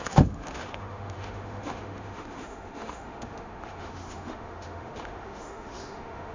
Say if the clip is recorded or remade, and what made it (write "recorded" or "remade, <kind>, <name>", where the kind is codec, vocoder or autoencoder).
remade, autoencoder, DAC-VAE